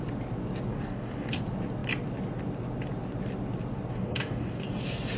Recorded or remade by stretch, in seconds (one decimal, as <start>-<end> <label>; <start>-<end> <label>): 0.0-0.7 recorded; 0.7-1.4 remade; 1.4-3.9 recorded; 3.9-4.7 remade; 4.7-5.2 recorded